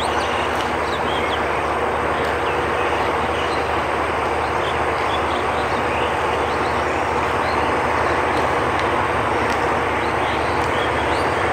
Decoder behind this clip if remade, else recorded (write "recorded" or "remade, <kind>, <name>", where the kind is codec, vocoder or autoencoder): recorded